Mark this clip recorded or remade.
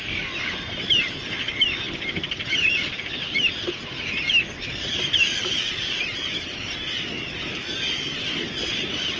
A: remade